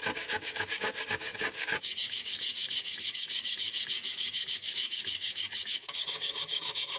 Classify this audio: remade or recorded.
remade